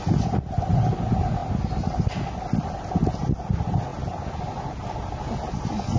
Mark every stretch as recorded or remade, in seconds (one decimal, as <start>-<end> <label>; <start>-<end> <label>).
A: 0.0-6.0 recorded